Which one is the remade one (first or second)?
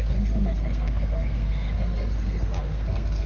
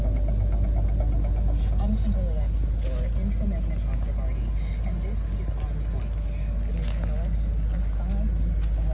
first